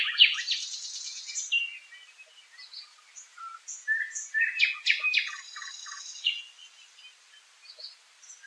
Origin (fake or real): real